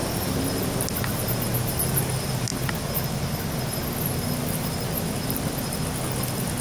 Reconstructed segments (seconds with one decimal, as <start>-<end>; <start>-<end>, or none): none